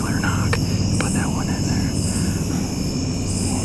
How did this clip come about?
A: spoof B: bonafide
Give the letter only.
B